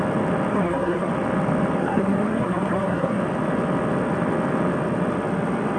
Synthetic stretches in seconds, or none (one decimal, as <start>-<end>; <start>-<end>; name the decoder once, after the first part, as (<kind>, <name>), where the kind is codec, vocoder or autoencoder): 0.5-1.1 (codec, SNAC); 1.8-3.2